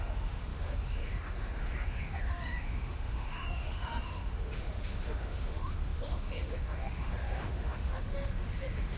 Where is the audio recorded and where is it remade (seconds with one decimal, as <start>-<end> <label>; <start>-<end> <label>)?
0.0-9.0 remade